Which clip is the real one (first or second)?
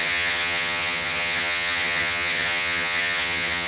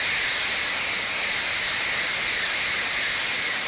second